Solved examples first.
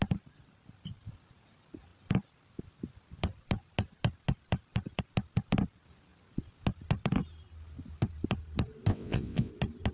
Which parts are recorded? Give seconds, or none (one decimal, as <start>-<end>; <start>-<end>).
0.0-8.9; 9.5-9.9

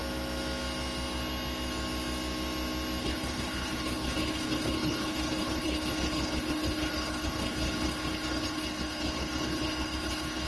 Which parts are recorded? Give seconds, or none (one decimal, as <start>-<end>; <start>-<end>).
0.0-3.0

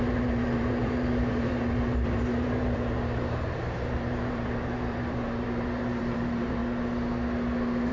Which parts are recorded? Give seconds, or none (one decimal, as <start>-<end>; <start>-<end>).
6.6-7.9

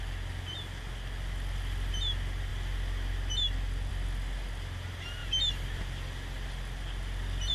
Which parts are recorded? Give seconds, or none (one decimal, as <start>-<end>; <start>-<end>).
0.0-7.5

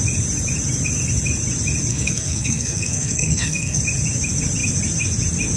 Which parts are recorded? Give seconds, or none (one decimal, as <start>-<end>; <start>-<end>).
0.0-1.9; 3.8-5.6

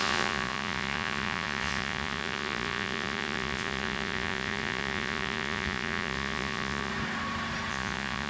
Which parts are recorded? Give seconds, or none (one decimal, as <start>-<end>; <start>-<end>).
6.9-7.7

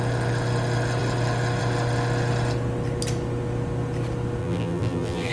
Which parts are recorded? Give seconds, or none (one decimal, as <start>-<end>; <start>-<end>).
0.0-4.4

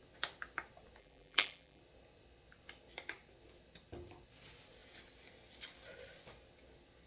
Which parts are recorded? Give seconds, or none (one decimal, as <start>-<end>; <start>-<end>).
0.0-1.0; 1.8-7.1